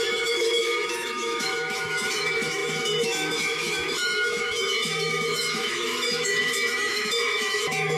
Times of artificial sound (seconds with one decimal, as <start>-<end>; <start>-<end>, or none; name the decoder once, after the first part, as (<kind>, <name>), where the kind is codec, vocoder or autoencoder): 0.0-8.0 (autoencoder, DAC-VAE)